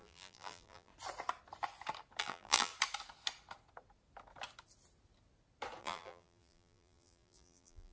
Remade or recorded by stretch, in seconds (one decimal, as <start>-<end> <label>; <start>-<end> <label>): 0.0-0.9 remade; 0.9-2.2 recorded; 2.2-2.7 remade; 2.7-5.8 recorded; 5.8-7.9 remade

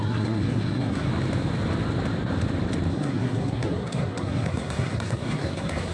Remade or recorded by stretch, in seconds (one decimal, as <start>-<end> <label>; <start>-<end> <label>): 0.0-1.1 remade; 1.1-2.9 recorded; 2.9-5.9 remade

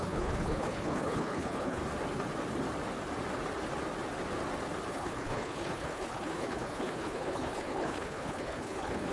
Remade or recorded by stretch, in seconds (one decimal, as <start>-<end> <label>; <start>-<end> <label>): 0.0-1.8 remade; 1.8-4.9 recorded; 4.9-9.1 remade

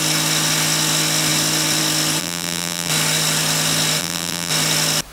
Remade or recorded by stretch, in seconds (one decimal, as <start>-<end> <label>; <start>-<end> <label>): 0.0-2.2 recorded; 2.2-2.9 remade; 2.9-4.0 recorded; 4.0-4.5 remade; 4.5-5.1 recorded

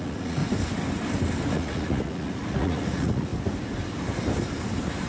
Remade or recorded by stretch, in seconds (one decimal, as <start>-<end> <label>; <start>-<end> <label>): 0.0-0.4 remade; 0.4-1.5 recorded; 1.5-3.3 remade; 3.3-5.1 recorded

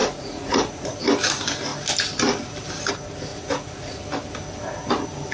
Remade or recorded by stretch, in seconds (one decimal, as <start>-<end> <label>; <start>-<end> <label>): 0.0-0.9 remade; 0.9-3.3 recorded; 3.3-4.0 remade; 4.0-5.3 recorded